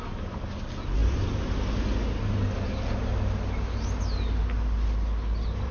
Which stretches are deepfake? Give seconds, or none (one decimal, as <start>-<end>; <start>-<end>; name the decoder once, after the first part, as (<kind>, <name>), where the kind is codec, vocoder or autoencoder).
none